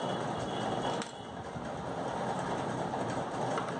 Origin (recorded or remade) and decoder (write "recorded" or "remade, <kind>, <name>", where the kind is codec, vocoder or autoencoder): recorded